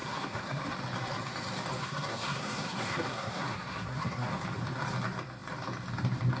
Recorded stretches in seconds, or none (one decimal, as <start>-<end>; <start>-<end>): 0.6-1.8; 4.3-6.4